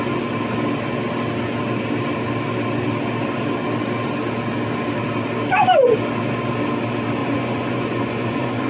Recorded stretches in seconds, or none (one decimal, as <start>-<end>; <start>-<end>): 0.0-7.2